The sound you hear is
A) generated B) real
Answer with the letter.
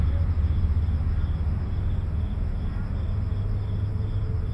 B